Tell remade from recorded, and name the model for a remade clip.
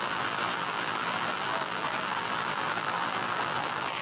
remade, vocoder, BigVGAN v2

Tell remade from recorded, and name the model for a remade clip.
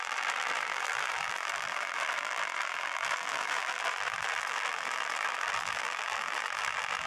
remade, vocoder, BigVGAN v2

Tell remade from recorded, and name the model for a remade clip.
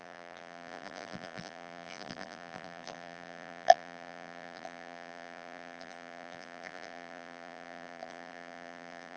remade, vocoder, BigVGAN v2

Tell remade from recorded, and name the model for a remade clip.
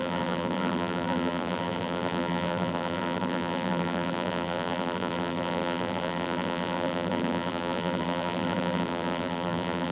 remade, vocoder, BigVGAN v2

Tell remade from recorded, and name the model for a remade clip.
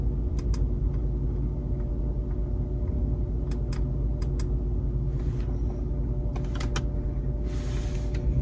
recorded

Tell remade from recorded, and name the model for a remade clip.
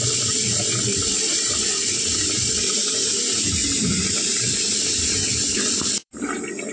remade, vocoder, BigVGAN v2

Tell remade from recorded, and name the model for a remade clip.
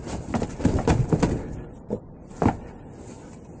recorded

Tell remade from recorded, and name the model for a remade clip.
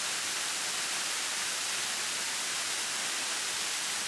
remade, vocoder, BigVGAN v2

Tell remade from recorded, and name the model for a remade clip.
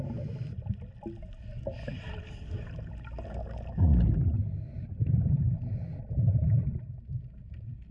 recorded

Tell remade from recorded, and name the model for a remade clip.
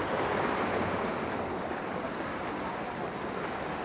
recorded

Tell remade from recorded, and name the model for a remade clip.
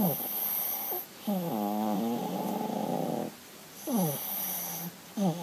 recorded